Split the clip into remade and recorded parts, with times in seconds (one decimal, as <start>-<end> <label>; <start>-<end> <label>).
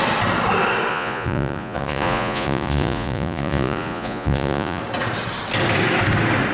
0.0-0.9 recorded; 0.9-4.8 remade; 4.8-6.5 recorded